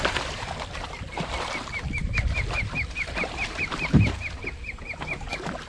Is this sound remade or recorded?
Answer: recorded